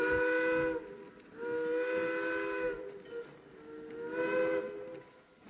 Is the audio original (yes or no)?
yes